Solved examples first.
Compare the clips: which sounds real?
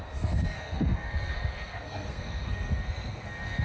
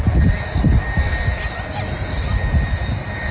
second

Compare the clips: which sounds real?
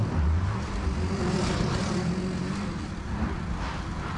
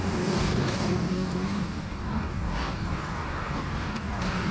first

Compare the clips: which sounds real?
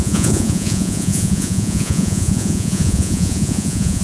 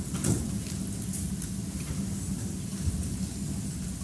second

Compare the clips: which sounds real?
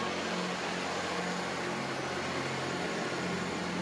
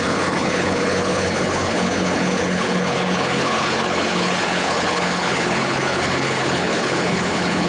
first